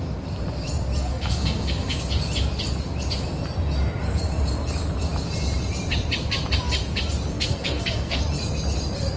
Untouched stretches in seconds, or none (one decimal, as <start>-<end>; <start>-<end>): 0.0-1.1; 2.0-7.3; 8.2-9.2